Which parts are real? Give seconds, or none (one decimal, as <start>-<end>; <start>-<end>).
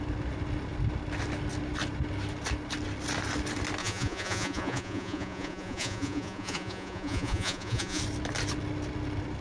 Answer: 0.0-3.8; 8.0-9.4